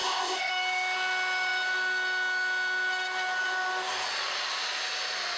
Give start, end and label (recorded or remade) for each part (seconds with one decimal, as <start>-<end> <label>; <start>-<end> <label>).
0.0-0.5 remade; 0.5-5.4 recorded